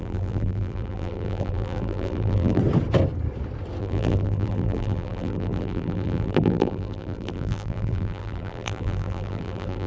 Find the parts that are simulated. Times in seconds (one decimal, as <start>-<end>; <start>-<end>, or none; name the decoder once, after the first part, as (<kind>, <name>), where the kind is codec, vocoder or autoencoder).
0.0-2.6 (vocoder, BigVGAN v2); 3.8-9.9